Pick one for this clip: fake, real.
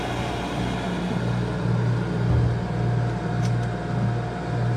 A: real